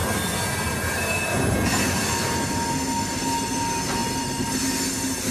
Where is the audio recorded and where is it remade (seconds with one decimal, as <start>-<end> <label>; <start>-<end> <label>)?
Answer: 0.0-5.3 recorded